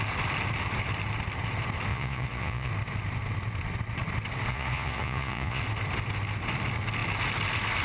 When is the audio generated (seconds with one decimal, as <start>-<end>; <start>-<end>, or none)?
1.9-2.7; 4.5-5.6